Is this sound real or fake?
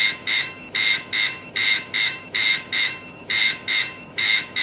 fake